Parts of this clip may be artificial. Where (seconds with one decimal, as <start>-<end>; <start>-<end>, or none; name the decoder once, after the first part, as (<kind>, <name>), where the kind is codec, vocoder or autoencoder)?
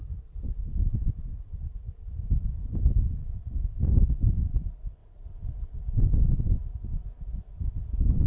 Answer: 1.3-2.2 (vocoder, BigVGAN v2); 3.2-3.7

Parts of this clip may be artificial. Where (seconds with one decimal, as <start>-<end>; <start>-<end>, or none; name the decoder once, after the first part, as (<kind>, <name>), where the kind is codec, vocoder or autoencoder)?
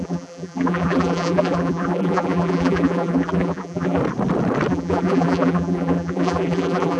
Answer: 0.0-4.0 (vocoder, BigVGAN v2); 4.7-7.0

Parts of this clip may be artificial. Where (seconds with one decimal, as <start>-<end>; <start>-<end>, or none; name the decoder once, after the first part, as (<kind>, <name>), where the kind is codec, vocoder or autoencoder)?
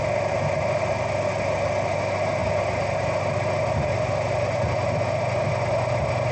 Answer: none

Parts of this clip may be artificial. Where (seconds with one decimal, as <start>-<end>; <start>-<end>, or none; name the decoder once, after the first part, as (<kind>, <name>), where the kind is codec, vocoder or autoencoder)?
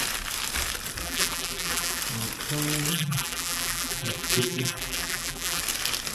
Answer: 1.0-2.0 (vocoder, BigVGAN v2); 2.9-5.6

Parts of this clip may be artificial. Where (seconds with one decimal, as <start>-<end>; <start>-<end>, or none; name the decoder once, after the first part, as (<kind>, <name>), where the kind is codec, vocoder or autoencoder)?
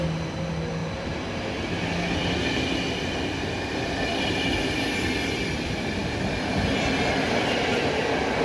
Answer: 0.8-1.8 (vocoder, BigVGAN v2)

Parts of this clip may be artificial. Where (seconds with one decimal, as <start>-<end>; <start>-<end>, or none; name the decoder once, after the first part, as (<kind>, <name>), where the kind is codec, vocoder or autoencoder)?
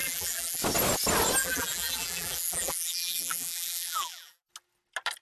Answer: 0.0-0.6 (vocoder, BigVGAN v2); 1.4-4.5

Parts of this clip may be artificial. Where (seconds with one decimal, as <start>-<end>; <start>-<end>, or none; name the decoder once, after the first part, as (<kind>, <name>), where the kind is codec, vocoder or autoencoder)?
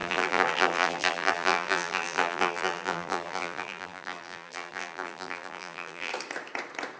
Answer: 0.0-6.1 (vocoder, BigVGAN v2)